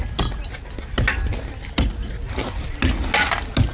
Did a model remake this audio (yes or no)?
no